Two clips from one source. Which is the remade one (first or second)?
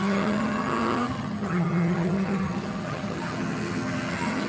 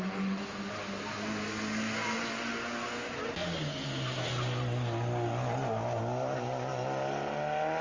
first